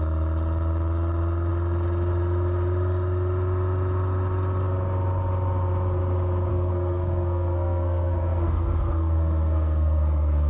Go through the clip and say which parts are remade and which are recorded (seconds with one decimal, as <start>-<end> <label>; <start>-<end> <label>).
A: 0.0-6.5 recorded; 6.5-10.5 remade